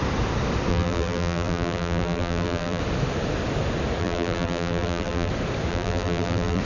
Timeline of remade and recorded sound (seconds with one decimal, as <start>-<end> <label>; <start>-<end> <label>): 0.0-0.7 recorded; 0.7-2.8 remade; 2.8-4.0 recorded; 4.0-5.3 remade; 5.3-5.7 recorded; 5.7-6.6 remade